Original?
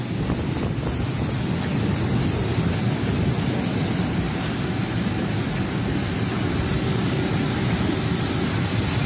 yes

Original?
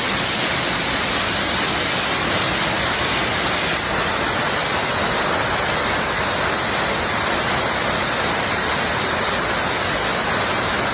yes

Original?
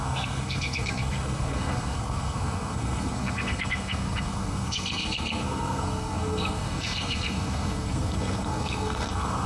no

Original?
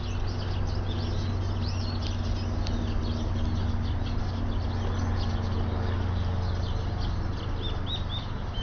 yes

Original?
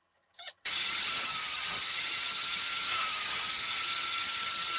no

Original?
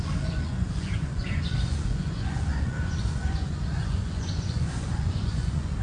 no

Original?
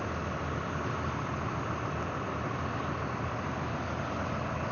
yes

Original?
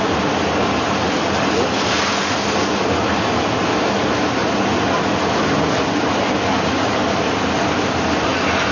yes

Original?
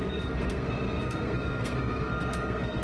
no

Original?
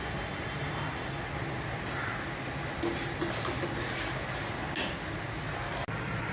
yes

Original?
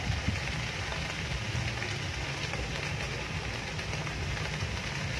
yes